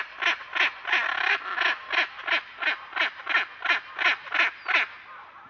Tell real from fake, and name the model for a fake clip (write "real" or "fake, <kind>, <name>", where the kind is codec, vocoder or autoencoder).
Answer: real